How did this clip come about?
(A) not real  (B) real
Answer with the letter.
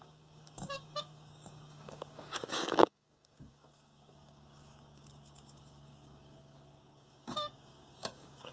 A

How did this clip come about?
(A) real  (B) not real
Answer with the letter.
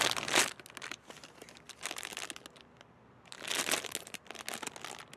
A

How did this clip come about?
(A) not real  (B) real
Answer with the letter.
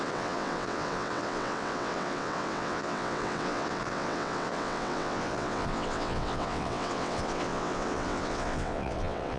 A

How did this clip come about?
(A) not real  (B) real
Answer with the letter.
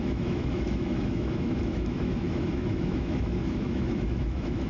A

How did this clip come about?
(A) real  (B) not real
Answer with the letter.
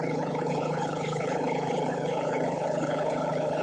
B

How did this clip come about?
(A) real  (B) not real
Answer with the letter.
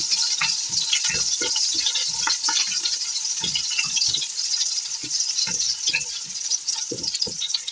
B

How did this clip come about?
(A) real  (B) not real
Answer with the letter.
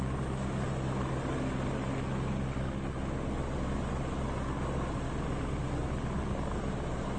A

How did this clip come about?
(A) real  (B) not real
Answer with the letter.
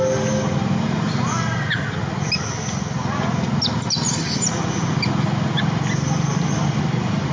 A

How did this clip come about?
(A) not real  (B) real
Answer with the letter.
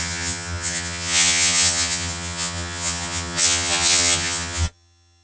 A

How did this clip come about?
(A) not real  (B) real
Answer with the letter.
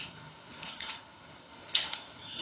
A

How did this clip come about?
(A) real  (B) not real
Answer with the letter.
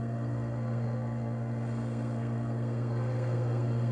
B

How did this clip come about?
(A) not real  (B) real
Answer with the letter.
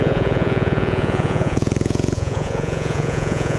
A